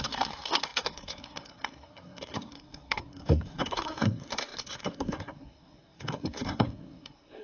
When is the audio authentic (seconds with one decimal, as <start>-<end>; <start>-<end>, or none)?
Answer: none